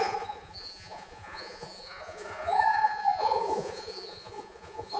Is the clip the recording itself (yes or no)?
no